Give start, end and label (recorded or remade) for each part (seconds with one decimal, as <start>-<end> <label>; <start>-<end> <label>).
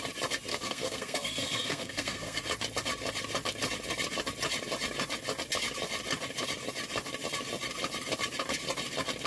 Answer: 0.0-0.5 recorded; 0.5-2.4 remade; 2.4-9.3 recorded